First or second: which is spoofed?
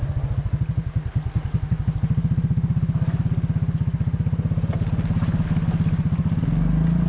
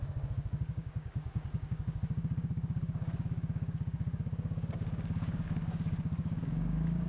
second